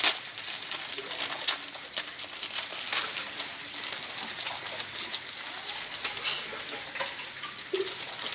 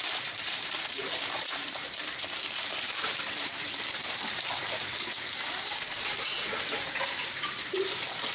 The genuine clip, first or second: first